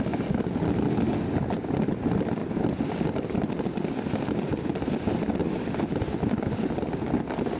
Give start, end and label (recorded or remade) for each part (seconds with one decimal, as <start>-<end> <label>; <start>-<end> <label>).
0.0-7.6 recorded